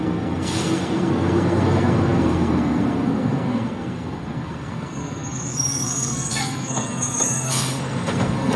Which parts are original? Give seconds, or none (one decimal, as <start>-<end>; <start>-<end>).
none